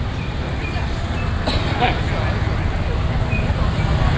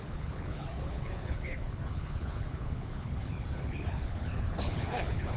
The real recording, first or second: first